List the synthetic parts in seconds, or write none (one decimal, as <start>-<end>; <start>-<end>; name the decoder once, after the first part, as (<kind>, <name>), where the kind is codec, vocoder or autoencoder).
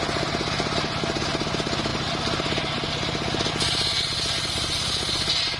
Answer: none